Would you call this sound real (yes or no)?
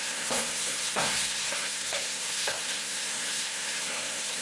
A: no